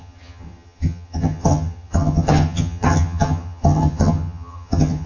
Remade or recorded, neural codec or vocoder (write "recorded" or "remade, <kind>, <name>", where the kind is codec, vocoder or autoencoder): remade, vocoder, HiFi-GAN